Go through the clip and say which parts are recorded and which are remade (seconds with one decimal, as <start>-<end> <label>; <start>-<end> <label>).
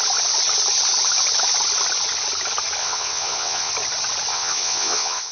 0.0-2.8 recorded; 2.8-3.7 remade; 3.7-4.3 recorded; 4.3-5.3 remade